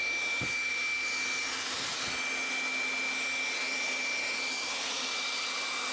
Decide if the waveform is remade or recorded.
recorded